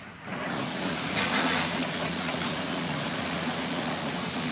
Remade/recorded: remade